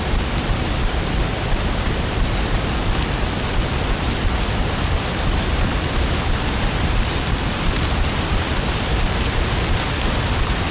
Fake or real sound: fake